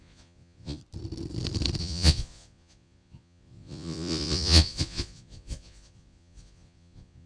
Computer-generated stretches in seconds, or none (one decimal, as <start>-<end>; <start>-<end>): 0.0-0.8; 1.8-7.3